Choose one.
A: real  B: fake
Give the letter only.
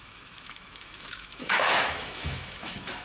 B